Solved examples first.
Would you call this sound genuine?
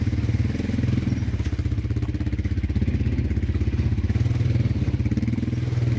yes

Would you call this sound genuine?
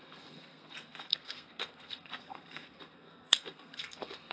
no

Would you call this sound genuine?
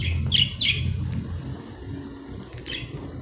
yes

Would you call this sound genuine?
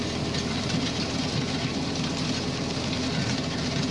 yes